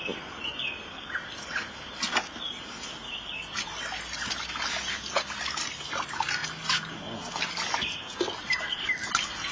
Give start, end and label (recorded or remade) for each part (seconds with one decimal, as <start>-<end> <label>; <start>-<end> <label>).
0.0-9.5 recorded